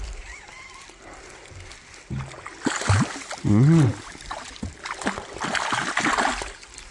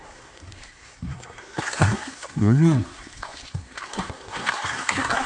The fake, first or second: second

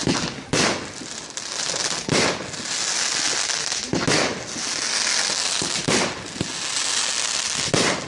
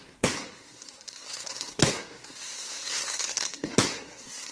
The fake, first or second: second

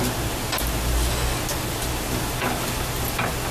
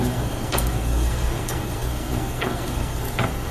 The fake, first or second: second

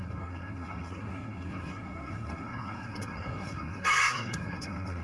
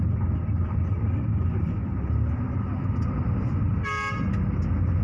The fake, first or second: first